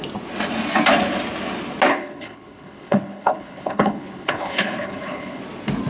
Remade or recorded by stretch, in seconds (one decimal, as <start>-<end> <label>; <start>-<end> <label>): 0.0-1.9 recorded; 1.9-5.4 remade; 5.4-5.9 recorded